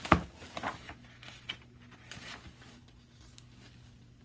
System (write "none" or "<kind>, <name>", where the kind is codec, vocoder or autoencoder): none